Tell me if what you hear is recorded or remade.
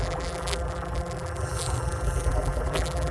remade